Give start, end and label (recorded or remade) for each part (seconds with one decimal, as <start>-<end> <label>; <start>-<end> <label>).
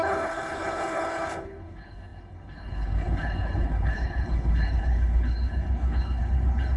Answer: 0.0-6.8 remade